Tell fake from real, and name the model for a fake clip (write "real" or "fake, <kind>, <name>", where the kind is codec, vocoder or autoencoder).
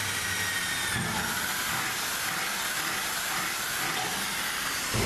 real